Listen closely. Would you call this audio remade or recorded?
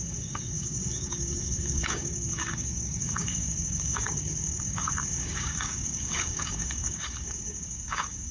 remade